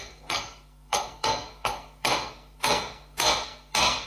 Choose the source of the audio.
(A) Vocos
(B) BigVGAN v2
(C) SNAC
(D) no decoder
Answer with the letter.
C